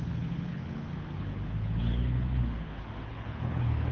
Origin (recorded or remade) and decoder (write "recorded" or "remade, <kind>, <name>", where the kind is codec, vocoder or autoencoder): remade, codec, HILCodec